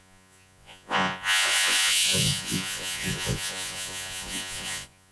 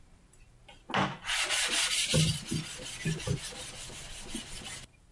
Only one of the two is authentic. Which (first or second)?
second